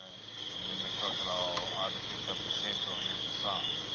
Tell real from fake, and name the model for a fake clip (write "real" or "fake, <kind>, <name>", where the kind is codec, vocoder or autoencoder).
fake, codec, DAC